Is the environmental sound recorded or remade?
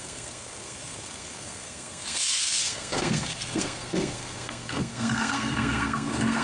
remade